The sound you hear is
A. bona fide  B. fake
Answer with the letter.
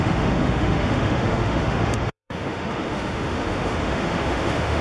B